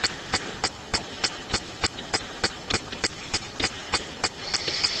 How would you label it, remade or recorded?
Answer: remade